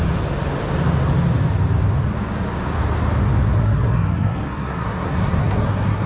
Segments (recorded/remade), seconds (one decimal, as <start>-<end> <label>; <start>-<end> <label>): 0.0-3.6 recorded; 3.6-6.1 remade